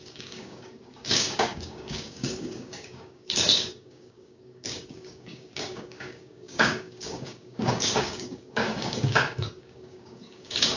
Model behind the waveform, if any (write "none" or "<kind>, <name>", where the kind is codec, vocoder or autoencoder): codec, DAC